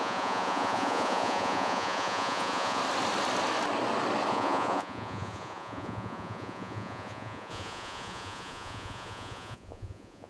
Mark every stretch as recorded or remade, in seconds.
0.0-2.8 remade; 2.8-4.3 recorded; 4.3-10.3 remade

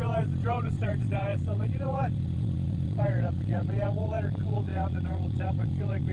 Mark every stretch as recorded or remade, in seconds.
0.0-6.1 remade

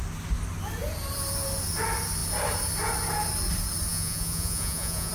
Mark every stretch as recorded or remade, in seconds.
0.0-3.9 recorded; 3.9-5.1 remade

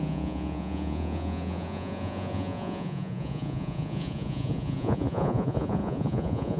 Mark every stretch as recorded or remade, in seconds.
0.0-6.6 remade

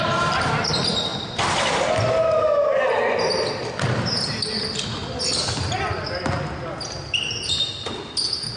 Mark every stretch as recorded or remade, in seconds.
0.0-8.6 recorded

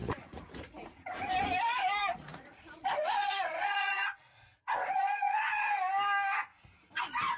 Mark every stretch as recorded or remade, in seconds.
0.0-1.3 remade; 1.3-2.0 recorded; 2.0-5.4 remade; 5.4-6.5 recorded; 6.5-7.0 remade; 7.0-7.4 recorded

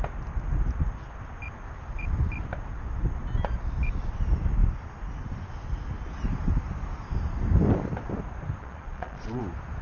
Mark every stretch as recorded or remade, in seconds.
0.0-8.6 recorded; 8.6-9.4 remade; 9.4-9.8 recorded

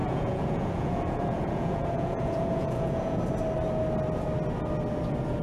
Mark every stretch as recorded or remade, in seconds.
0.0-3.2 remade; 3.2-5.4 recorded